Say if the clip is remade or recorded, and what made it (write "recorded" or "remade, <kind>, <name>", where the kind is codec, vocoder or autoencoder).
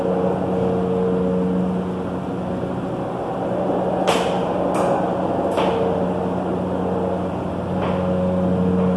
recorded